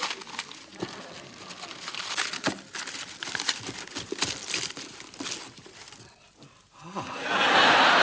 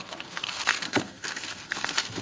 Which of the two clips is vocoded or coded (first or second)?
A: second